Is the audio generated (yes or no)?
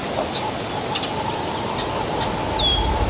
no